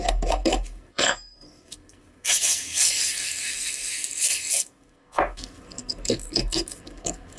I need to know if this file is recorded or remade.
remade